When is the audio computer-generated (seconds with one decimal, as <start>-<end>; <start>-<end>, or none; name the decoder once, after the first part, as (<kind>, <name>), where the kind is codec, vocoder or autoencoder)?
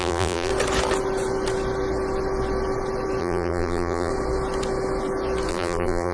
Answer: 0.0-0.5 (vocoder, BigVGAN v2); 3.2-4.1; 5.5-6.1